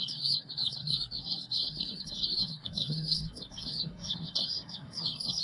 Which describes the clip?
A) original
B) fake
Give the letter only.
B